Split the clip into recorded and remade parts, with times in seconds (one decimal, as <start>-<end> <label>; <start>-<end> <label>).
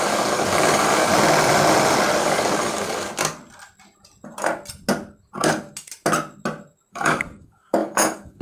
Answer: 0.0-1.1 remade; 1.1-2.2 recorded; 2.2-3.2 remade; 3.2-6.9 recorded; 6.9-8.4 remade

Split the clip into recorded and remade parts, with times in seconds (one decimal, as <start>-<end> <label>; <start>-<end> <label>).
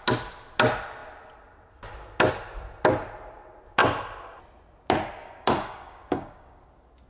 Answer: 0.0-5.2 recorded; 5.2-6.6 remade; 6.6-7.1 recorded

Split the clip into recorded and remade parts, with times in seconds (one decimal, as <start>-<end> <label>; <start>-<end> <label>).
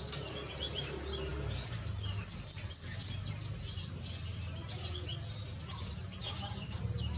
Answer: 0.0-6.2 recorded; 6.2-6.8 remade; 6.8-7.2 recorded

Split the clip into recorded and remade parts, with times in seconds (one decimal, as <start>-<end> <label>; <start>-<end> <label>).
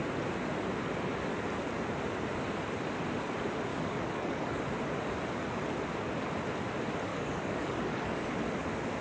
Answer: 0.0-3.7 recorded; 3.7-4.6 remade; 4.6-7.1 recorded; 7.1-8.3 remade; 8.3-9.0 recorded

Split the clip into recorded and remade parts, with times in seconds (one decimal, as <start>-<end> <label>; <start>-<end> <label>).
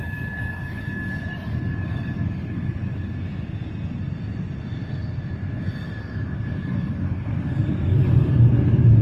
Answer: 0.0-2.8 remade; 2.8-6.0 recorded; 6.0-9.0 remade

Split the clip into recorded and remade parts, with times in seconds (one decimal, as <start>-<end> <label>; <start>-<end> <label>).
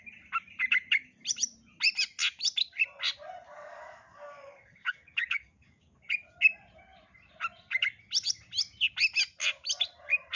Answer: 0.0-3.5 recorded; 3.5-6.1 remade; 6.1-10.4 recorded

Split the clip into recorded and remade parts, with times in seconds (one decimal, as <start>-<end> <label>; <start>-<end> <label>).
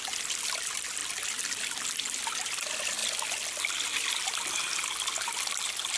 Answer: 0.0-6.0 recorded